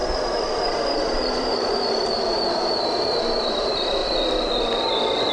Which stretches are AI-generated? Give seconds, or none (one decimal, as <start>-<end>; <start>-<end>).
0.0-4.0